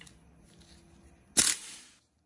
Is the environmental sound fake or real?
real